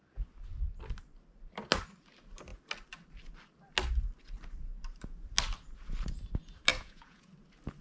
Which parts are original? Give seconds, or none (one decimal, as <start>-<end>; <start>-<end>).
0.0-6.7; 7.3-7.8